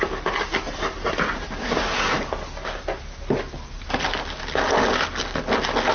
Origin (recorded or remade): recorded